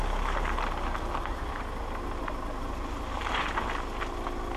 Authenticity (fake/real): real